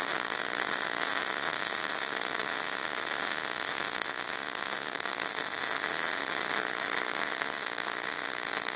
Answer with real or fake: real